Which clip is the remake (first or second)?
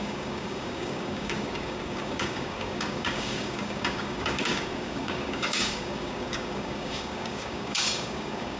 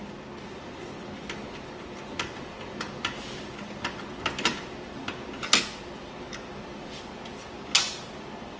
first